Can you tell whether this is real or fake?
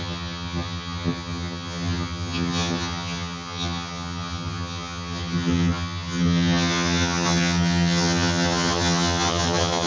fake